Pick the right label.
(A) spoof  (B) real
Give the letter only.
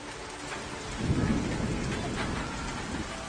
B